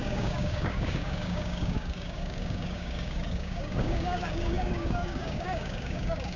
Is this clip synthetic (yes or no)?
yes